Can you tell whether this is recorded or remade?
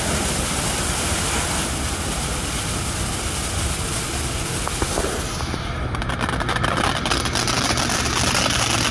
recorded